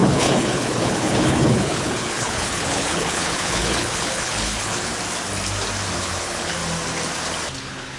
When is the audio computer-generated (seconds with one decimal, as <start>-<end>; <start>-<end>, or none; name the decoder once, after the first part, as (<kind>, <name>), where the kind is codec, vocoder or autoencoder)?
0.0-4.9 (codec, HILCodec); 6.0-6.6; 7.6-8.0